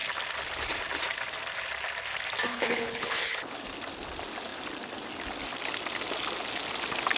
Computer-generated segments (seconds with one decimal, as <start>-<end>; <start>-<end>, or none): 2.5-3.6